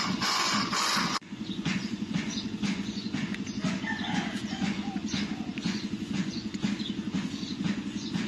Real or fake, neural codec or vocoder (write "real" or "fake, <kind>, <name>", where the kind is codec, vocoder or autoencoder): fake, vocoder, Vocos